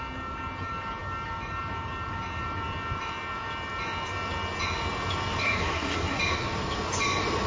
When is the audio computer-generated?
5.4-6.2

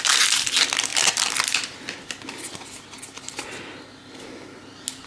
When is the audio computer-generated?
none